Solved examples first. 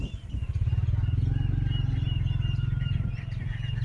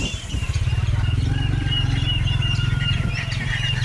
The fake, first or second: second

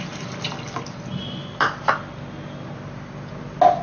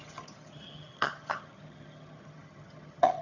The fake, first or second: second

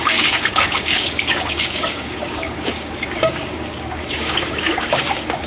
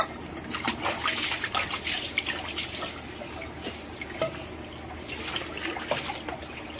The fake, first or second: first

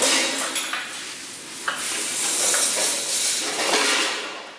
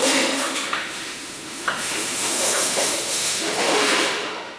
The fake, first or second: second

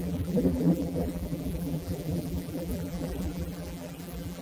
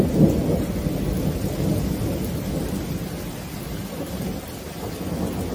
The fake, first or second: first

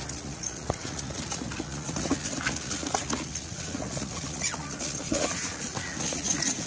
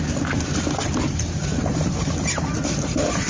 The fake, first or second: first